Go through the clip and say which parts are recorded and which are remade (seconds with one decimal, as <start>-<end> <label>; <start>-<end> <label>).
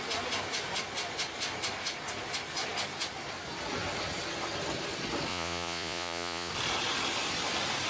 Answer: 0.0-5.3 recorded; 5.3-6.5 remade; 6.5-7.9 recorded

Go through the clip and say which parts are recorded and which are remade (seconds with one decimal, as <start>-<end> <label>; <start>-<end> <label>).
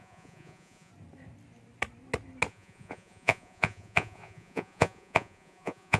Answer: 0.0-0.9 remade; 0.9-2.5 recorded; 2.5-6.0 remade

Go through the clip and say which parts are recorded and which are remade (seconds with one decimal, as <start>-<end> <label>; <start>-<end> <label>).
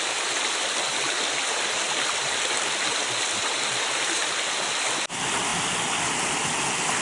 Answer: 0.0-7.0 recorded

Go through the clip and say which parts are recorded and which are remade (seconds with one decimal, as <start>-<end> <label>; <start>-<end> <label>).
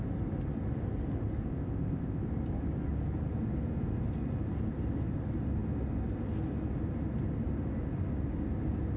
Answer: 0.0-1.5 recorded; 1.5-2.2 remade; 2.2-9.0 recorded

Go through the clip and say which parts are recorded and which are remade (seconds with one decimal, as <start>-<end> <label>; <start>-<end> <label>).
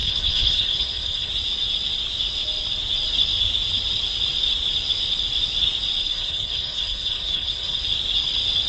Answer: 0.0-1.3 remade; 1.3-6.0 recorded; 6.0-7.8 remade; 7.8-8.7 recorded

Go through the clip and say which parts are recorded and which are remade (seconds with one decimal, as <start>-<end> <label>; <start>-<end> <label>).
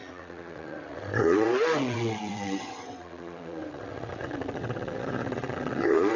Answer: 0.0-6.2 remade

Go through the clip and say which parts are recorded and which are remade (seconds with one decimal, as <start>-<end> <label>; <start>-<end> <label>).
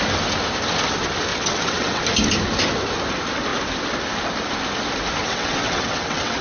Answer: 0.0-1.3 recorded; 1.3-2.0 remade; 2.0-5.2 recorded; 5.2-6.4 remade